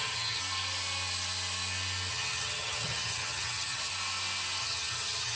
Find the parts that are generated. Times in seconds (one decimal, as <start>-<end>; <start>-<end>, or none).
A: 0.0-0.4; 2.1-3.9; 4.6-5.4